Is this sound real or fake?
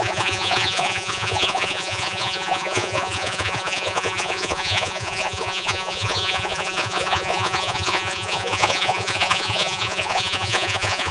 fake